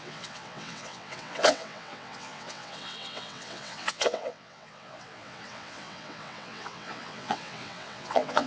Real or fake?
fake